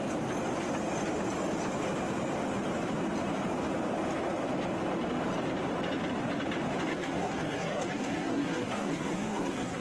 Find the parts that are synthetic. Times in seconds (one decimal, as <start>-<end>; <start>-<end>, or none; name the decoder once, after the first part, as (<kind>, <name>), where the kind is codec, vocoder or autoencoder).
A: 6.9-9.8 (codec, SNAC)